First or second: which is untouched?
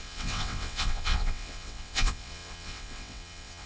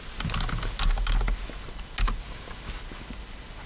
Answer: second